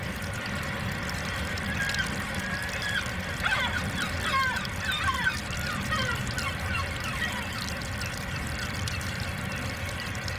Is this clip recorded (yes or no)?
yes